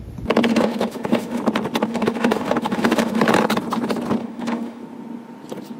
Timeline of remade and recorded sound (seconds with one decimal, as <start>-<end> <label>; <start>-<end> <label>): 0.0-0.5 recorded; 0.5-1.4 remade; 1.4-1.9 recorded; 1.9-3.2 remade; 3.2-4.2 recorded; 4.2-4.8 remade; 4.8-5.8 recorded